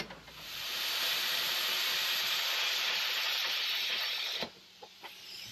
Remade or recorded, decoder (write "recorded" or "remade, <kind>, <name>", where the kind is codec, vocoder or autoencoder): remade, vocoder, BigVGAN v2